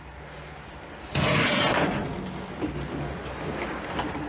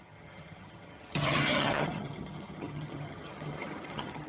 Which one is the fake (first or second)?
second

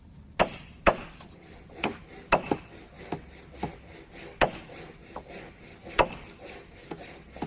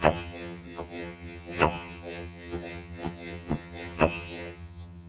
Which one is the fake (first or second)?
second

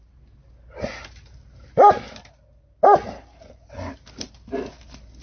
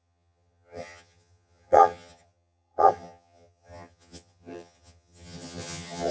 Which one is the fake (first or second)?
second